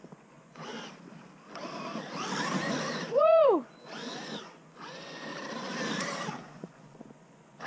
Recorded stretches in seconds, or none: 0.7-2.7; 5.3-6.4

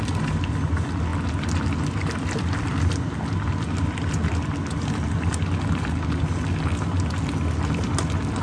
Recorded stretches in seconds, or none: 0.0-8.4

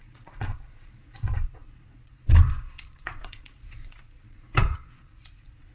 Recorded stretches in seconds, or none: none